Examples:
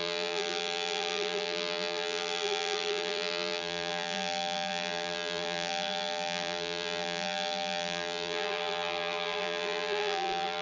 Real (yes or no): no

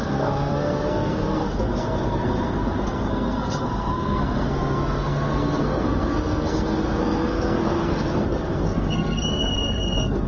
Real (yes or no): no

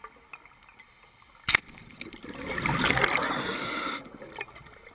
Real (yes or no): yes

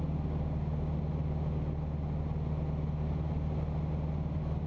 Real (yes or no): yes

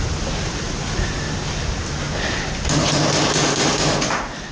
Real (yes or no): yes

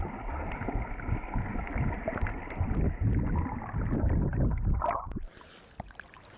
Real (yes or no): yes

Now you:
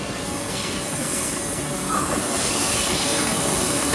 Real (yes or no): no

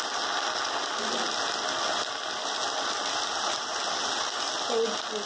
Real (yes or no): yes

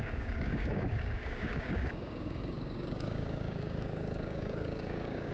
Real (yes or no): no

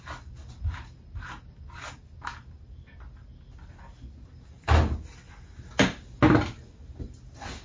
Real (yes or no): yes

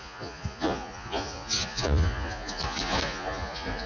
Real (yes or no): no